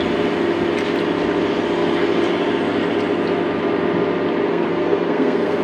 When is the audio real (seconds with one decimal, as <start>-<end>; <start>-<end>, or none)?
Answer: 0.0-4.5